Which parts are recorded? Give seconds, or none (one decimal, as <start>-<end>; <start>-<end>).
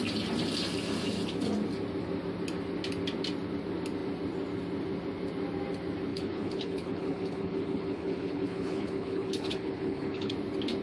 0.0-6.1; 10.3-10.8